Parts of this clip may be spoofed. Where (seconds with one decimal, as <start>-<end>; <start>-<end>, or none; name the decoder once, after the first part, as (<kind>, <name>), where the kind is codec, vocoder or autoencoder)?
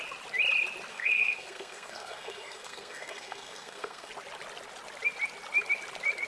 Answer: 0.9-4.1 (codec, SNAC)